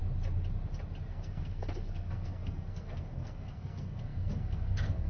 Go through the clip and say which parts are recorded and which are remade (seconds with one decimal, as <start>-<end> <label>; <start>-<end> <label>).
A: 0.0-1.1 recorded; 1.1-5.1 remade